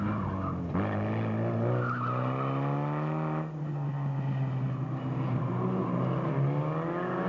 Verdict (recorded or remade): recorded